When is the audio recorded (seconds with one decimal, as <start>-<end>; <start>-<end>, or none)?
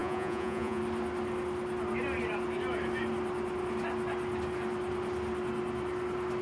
0.8-6.4